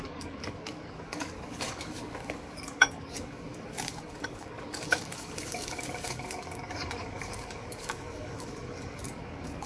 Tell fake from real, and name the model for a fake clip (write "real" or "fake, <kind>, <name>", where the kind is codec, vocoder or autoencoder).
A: fake, codec, DAC